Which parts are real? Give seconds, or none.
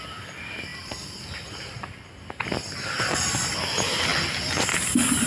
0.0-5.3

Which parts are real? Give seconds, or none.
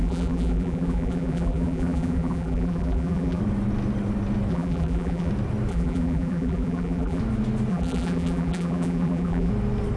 3.4-4.5; 5.3-5.7; 7.2-7.7; 9.5-10.0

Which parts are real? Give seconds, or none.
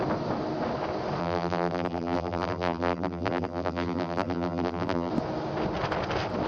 0.0-1.2; 5.1-6.5